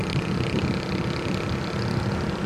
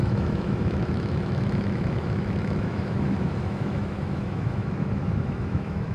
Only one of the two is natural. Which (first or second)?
first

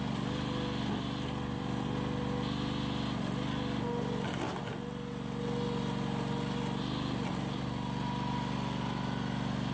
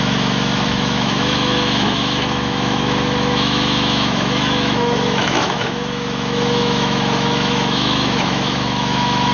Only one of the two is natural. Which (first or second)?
first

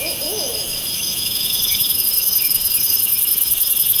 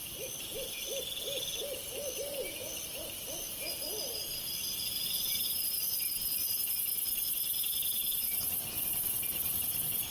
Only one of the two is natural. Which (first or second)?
second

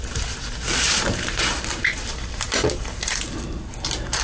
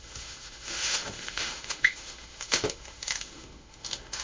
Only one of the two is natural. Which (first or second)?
first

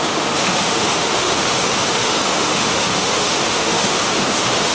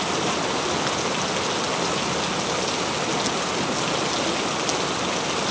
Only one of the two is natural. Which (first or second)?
second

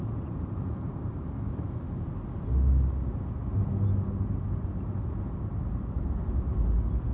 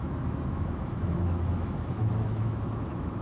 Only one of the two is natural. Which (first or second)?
first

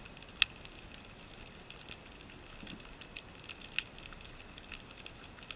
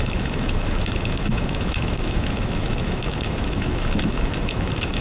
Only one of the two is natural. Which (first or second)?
first